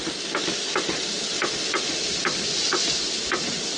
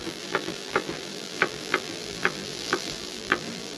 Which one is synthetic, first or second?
second